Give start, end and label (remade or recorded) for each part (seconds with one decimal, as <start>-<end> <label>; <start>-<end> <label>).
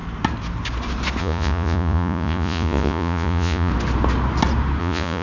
0.0-1.2 recorded; 1.2-3.7 remade; 3.7-4.8 recorded; 4.8-5.2 remade